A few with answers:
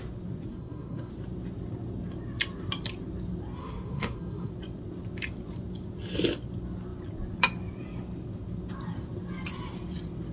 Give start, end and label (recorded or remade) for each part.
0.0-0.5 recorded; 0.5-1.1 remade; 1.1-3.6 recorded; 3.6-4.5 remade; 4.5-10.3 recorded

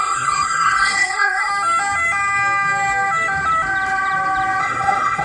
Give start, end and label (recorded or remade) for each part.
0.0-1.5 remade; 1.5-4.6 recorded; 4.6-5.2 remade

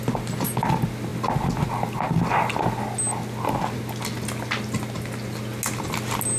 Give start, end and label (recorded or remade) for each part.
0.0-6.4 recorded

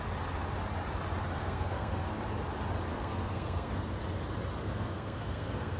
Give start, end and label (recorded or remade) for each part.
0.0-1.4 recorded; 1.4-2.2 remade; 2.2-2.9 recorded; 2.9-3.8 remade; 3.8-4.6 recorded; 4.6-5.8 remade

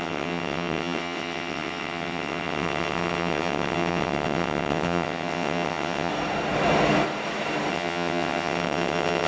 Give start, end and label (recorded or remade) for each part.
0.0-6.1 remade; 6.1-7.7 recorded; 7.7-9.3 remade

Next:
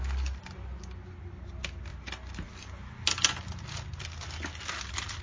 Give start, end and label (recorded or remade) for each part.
0.0-5.2 recorded

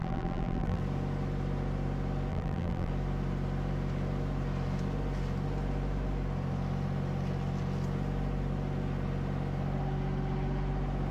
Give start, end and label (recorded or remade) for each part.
0.0-0.8 remade; 0.8-2.3 recorded; 2.3-2.9 remade; 2.9-11.1 recorded

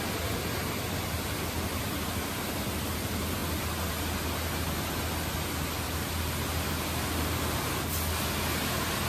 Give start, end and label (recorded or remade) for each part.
0.0-9.1 recorded